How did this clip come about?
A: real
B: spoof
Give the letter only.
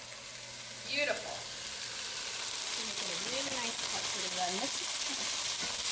A